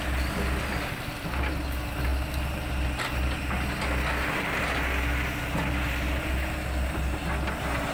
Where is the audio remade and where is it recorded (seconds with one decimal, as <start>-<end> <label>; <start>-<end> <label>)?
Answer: 0.0-7.9 recorded